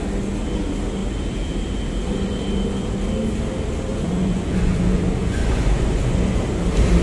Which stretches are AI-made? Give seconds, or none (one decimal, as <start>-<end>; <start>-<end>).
3.9-6.4